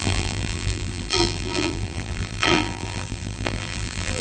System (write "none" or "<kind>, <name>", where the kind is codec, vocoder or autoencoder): vocoder, BigVGAN v2